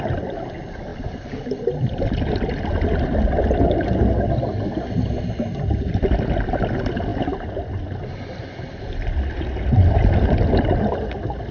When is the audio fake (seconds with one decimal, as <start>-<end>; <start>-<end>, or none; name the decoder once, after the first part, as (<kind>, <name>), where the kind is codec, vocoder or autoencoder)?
none